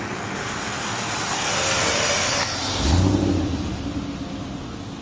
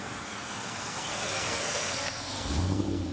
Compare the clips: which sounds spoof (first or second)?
second